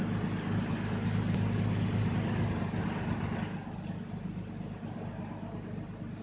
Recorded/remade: recorded